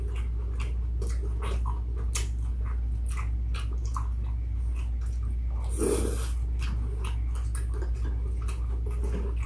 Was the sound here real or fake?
real